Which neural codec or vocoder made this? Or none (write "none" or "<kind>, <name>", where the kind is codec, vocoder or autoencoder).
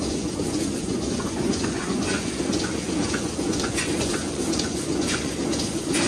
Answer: vocoder, Vocos